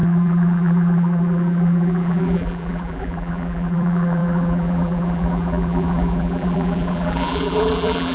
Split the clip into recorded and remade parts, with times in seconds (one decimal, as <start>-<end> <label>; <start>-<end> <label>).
0.0-8.1 remade